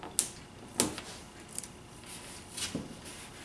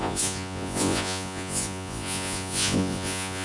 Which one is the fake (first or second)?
second